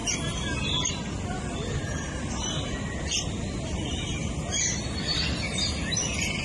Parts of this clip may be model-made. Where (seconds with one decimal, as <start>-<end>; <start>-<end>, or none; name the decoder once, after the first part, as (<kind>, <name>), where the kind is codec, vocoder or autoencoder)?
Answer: none